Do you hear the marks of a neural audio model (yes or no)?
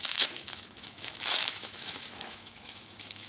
yes